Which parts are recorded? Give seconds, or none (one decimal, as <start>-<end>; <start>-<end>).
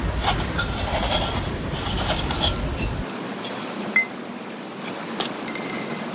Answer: 0.0-6.1